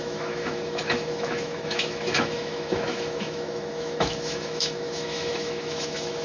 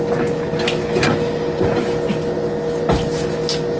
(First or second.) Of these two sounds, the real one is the second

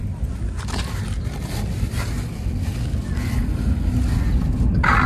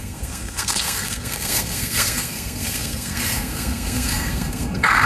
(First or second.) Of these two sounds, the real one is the first